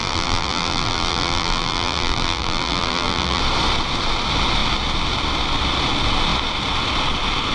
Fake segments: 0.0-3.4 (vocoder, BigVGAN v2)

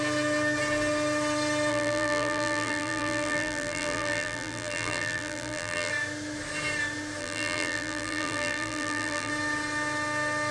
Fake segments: 1.7-5.9 (vocoder, BigVGAN v2); 7.2-9.3

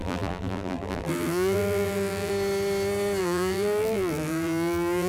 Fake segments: 0.0-2.3 (vocoder, BigVGAN v2); 3.2-5.1